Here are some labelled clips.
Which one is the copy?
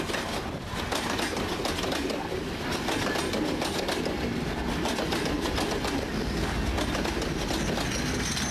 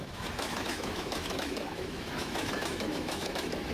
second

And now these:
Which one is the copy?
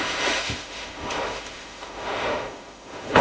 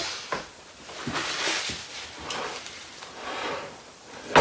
first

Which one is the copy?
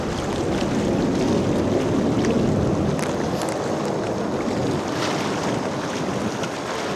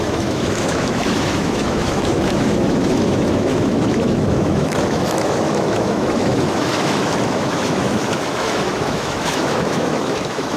second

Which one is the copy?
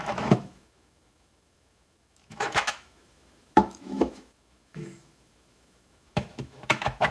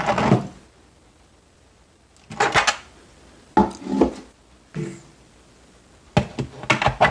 first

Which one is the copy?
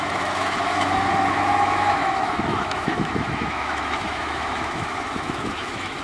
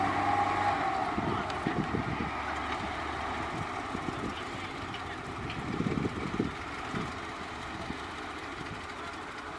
first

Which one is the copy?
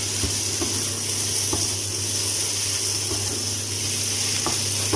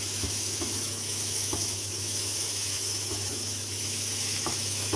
second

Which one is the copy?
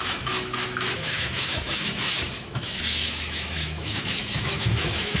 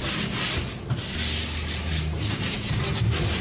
first